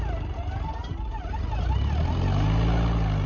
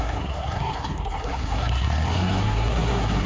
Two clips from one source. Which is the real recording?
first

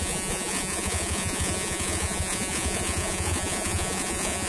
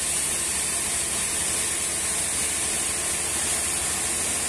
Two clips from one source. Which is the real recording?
second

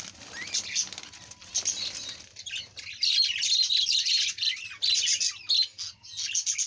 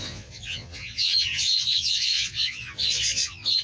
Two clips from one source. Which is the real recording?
first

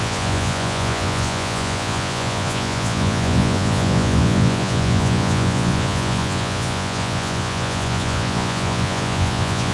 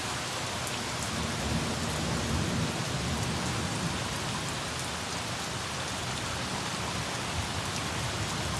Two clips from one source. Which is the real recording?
second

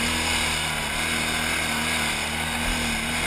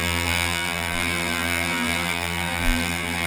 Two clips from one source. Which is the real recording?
first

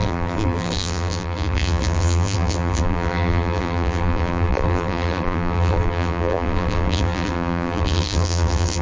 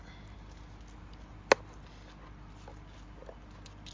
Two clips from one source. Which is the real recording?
second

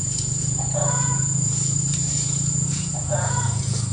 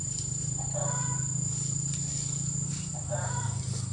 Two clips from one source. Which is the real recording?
second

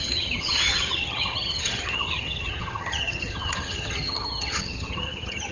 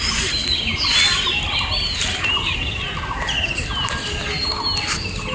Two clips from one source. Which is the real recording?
second